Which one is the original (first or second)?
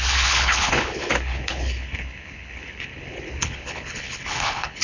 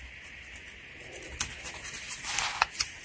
second